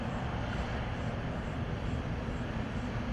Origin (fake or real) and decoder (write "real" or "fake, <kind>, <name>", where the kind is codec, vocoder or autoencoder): fake, vocoder, BigVGAN v2